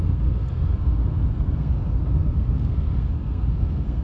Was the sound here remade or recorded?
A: remade